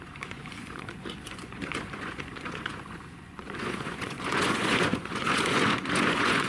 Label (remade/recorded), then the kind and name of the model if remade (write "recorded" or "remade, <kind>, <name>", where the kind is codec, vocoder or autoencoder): remade, vocoder, Vocos